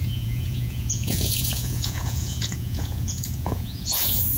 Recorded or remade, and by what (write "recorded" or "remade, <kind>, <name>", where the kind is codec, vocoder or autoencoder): remade, vocoder, Vocos